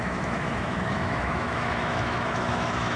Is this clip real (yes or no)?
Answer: no